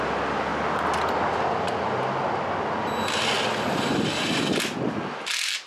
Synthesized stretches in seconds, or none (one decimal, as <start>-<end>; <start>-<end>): none

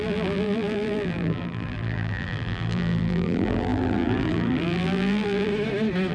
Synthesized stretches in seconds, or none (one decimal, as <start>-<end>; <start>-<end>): 0.0-5.5

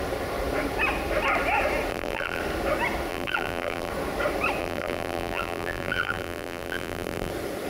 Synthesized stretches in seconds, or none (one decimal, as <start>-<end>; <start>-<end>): 1.9-2.4; 3.1-3.9; 4.6-7.3

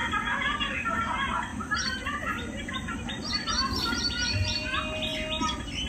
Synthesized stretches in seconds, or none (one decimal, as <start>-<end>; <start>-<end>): 1.5-3.9

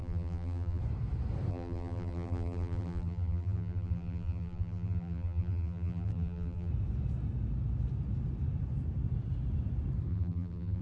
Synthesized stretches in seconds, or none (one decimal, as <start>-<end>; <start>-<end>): 0.0-0.8; 1.5-6.7; 10.1-10.8